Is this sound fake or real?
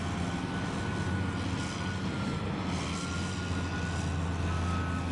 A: real